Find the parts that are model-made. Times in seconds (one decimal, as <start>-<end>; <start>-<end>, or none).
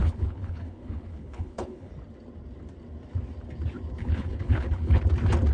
0.0-1.9; 4.0-5.0